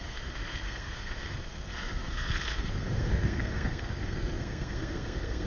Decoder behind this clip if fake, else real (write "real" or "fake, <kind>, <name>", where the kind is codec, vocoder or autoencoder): fake, codec, SNAC